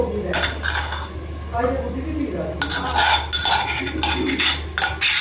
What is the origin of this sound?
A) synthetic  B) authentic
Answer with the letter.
B